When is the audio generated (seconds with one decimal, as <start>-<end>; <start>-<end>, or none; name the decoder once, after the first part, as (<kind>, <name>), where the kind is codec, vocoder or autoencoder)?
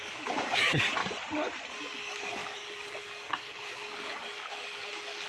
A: 0.0-1.0 (codec, DAC); 1.7-5.3